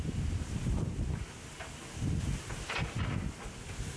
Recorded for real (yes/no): yes